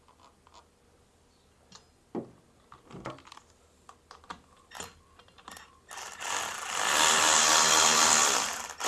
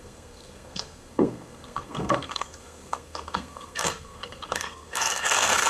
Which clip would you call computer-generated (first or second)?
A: second